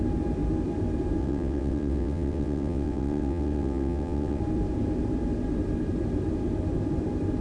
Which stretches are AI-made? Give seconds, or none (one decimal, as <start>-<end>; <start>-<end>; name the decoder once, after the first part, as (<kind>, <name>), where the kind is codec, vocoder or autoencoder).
1.2-4.4 (vocoder, WaveNeXt)